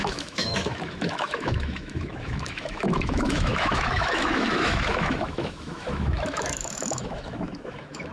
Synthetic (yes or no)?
yes